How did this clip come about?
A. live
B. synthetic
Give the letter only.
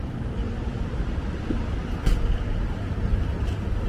B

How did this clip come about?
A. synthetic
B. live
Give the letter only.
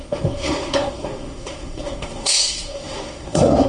A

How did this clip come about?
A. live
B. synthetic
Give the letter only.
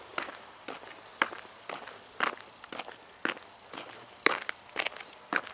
A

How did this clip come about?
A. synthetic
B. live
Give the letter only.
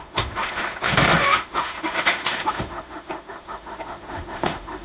A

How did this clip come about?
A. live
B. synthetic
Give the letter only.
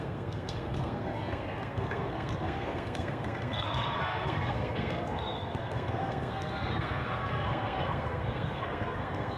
B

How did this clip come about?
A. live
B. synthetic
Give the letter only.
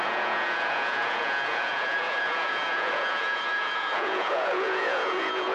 B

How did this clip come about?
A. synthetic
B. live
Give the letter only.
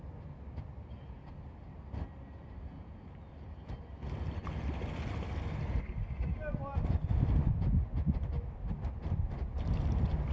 B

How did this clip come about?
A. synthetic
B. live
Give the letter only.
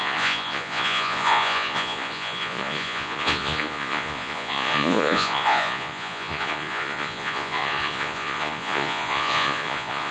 A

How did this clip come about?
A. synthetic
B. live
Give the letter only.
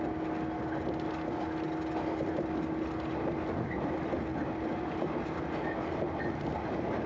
B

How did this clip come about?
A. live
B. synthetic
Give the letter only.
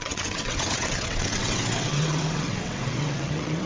B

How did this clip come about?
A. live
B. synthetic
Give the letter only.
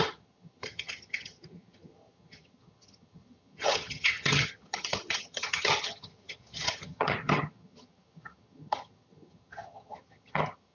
B